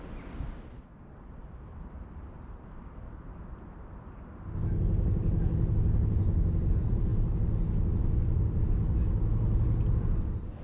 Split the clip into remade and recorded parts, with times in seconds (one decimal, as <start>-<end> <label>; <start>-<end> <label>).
0.0-10.6 recorded